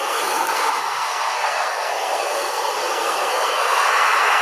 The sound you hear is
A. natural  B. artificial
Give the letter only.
B